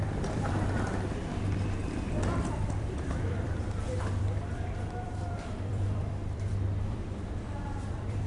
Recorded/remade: remade